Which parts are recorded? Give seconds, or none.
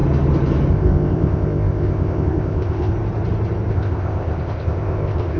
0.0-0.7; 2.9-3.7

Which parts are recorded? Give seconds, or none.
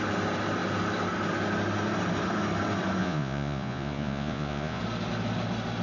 0.0-3.0; 4.8-5.8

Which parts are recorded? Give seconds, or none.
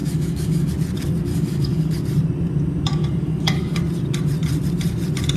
0.7-1.3; 1.9-2.9; 3.8-5.4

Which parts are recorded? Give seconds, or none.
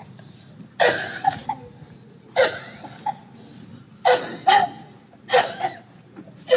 1.4-4.9